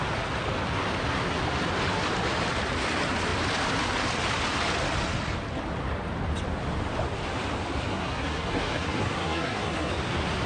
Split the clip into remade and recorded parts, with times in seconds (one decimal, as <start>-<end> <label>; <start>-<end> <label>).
0.0-7.9 recorded; 7.9-9.9 remade; 9.9-10.5 recorded